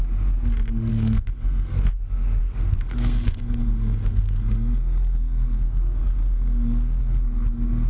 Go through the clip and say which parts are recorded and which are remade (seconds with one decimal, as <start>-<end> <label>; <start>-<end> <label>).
0.0-0.9 recorded; 0.9-1.8 remade; 1.8-2.4 recorded; 2.4-7.0 remade; 7.0-7.9 recorded